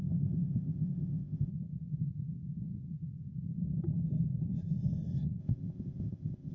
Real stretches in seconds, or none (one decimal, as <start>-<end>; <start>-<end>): 1.5-5.4